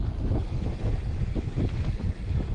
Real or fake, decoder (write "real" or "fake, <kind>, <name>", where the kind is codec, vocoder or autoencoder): real